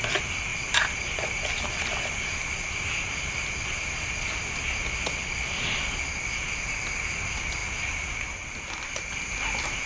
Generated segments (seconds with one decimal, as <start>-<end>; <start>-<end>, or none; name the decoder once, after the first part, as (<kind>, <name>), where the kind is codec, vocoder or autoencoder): none